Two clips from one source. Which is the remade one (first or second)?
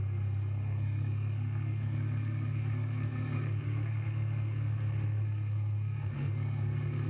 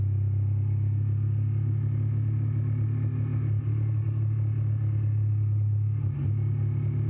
first